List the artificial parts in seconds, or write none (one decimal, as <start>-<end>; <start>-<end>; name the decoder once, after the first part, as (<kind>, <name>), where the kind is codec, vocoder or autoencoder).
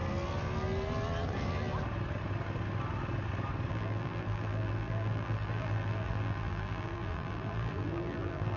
3.7-8.6 (vocoder, BigVGAN v2)